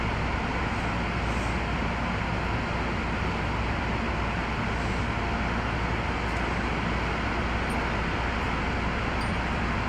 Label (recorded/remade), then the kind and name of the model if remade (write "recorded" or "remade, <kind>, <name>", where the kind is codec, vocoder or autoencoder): recorded